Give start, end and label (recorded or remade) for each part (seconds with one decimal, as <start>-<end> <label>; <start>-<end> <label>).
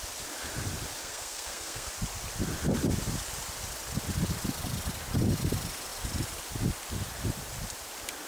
0.0-1.0 recorded; 1.0-1.9 remade; 1.9-8.3 recorded